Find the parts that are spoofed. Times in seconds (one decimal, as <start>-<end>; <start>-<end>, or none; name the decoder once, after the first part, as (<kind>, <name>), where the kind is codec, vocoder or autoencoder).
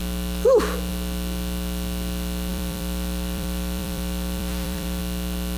2.5-5.0 (vocoder, BigVGAN v2)